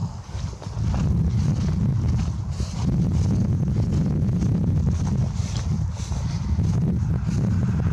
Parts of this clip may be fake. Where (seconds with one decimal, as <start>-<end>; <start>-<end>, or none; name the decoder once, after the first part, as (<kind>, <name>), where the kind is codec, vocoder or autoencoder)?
0.0-0.7 (codec, DAC)